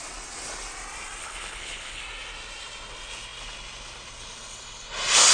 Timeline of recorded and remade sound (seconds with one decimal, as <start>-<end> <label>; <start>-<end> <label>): 0.0-1.2 recorded; 1.2-2.0 remade; 2.0-5.3 recorded